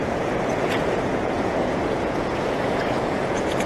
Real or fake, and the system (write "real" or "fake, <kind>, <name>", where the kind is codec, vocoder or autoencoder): fake, vocoder, Vocos